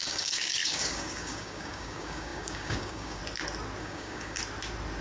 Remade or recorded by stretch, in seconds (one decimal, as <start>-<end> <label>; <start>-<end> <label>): 0.0-3.2 remade; 3.2-3.8 recorded; 3.8-4.4 remade; 4.4-5.0 recorded